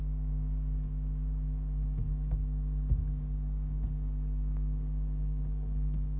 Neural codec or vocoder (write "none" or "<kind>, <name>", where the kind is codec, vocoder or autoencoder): codec, DAC